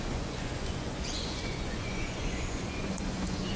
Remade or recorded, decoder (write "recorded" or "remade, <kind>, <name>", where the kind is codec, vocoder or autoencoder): remade, vocoder, Vocos